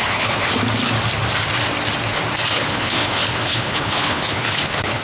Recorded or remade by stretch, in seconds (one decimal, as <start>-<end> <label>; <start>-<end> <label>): 0.0-0.5 remade; 0.5-2.5 recorded; 2.5-5.0 remade